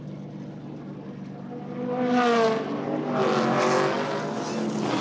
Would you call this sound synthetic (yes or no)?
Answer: no